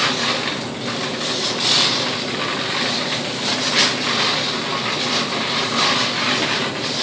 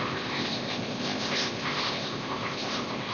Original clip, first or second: first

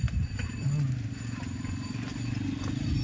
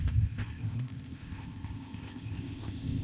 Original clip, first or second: first